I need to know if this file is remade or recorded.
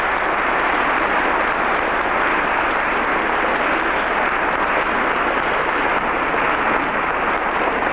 recorded